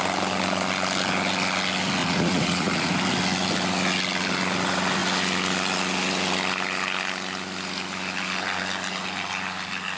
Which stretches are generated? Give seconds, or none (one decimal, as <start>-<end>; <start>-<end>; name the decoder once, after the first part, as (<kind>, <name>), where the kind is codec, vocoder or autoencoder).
2.0-2.9 (vocoder, Vocos)